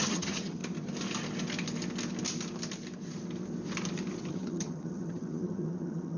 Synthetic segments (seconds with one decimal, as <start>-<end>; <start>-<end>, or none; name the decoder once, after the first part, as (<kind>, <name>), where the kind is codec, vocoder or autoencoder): 0.0-0.6 (vocoder, HiFi-GAN); 4.3-6.2